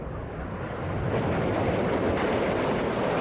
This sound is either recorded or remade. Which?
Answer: recorded